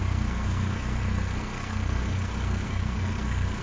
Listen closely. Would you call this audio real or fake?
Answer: fake